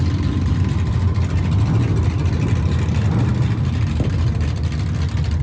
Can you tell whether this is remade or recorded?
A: recorded